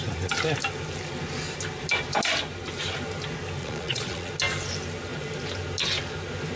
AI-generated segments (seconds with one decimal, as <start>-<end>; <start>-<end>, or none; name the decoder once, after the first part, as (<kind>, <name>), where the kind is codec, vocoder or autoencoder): 3.6-4.3 (vocoder, Vocos)